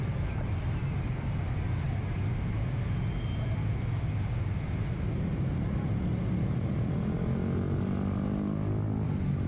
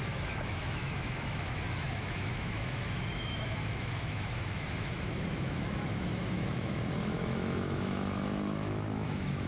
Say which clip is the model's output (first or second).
second